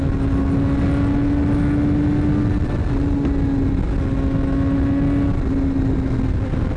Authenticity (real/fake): real